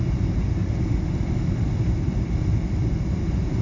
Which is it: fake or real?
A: real